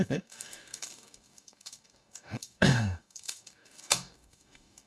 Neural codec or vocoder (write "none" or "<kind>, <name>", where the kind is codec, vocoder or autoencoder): codec, DAC